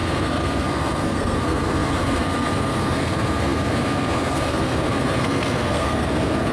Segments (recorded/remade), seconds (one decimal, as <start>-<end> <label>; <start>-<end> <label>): 0.0-6.5 remade